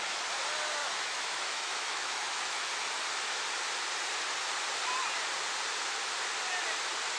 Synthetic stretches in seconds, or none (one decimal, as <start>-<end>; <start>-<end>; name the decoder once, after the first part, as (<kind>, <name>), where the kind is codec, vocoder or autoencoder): 0.8-2.7 (autoencoder, DAC-VAE)